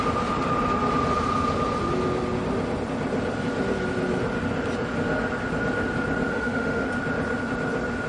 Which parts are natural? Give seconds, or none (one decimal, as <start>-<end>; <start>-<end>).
0.0-6.3; 6.9-8.1